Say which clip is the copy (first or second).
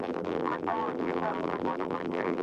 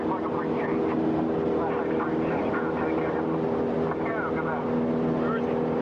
first